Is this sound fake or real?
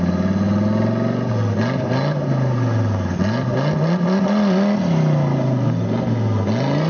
real